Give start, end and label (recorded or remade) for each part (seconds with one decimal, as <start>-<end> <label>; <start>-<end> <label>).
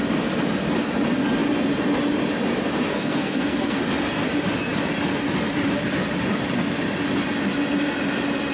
0.0-2.9 recorded; 2.9-3.8 remade; 3.8-8.5 recorded